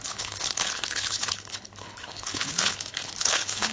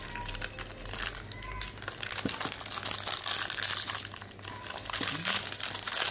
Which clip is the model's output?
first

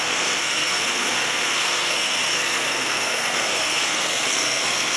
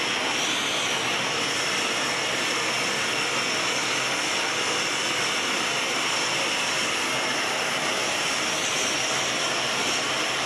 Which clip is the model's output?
first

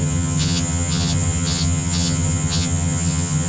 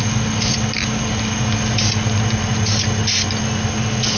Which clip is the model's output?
first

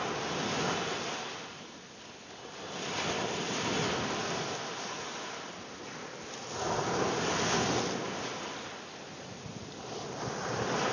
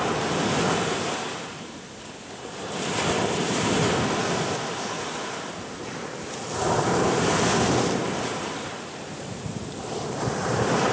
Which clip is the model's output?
second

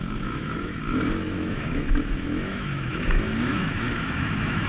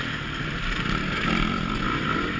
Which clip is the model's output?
first